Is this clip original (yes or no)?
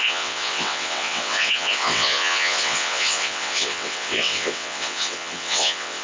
no